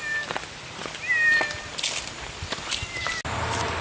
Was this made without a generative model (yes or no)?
yes